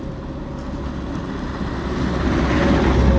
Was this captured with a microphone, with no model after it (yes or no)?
yes